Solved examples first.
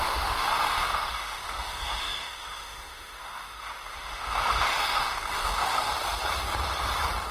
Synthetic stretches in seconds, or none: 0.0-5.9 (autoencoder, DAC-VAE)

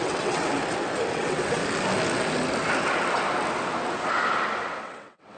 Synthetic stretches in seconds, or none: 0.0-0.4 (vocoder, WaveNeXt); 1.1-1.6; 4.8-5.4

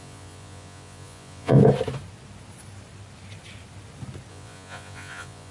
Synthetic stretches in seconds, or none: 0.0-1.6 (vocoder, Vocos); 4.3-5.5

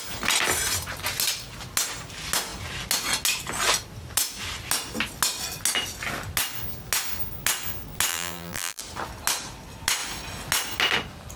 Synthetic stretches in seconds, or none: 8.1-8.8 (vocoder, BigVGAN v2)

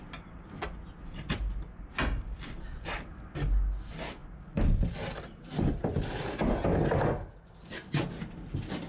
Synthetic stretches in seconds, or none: none